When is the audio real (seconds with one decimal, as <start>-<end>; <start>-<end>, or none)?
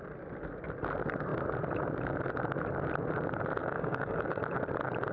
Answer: 0.0-3.6; 4.4-5.1